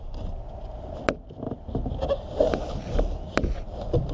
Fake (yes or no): no